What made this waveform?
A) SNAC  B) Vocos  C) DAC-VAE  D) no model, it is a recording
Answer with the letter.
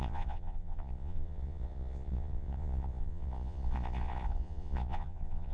B